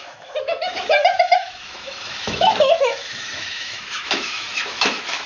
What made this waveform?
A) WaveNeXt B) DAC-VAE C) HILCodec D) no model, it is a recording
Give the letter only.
B